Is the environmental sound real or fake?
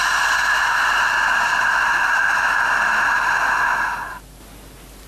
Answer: real